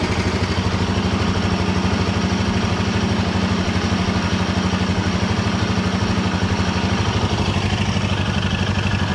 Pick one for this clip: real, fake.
real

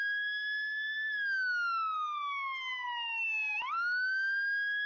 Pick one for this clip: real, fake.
real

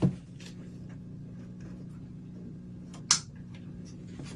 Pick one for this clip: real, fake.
real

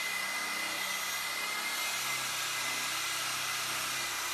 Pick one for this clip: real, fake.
real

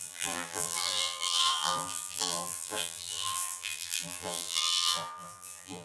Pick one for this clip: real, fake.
fake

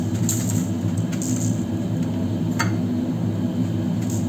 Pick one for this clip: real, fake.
real